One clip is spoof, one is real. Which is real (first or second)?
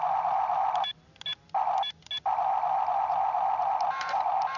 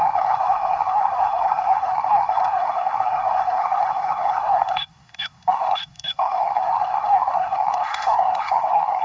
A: first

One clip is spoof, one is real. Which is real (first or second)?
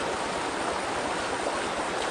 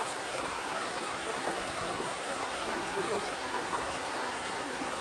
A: first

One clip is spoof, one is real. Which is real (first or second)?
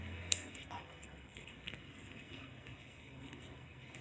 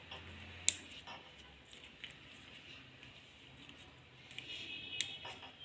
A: second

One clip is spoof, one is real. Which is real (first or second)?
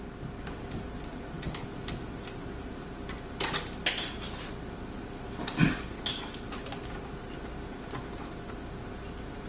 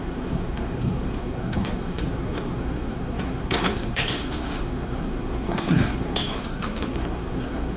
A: first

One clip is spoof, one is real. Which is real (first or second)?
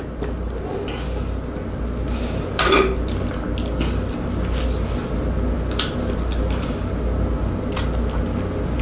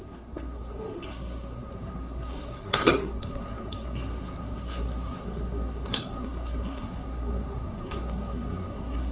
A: first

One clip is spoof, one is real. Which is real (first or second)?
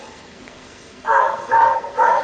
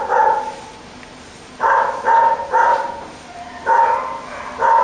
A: second